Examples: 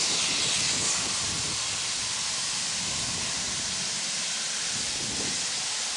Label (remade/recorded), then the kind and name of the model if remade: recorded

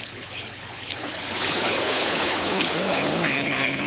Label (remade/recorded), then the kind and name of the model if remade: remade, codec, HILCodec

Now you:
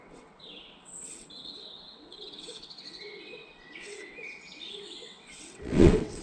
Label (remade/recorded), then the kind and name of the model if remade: remade, vocoder, WaveNeXt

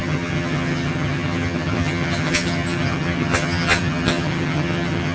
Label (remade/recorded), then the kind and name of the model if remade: remade, vocoder, HiFi-GAN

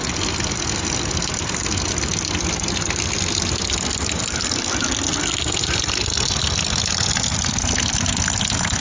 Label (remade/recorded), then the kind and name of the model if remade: recorded